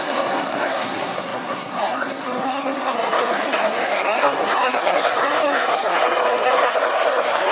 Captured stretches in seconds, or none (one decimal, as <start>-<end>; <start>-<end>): none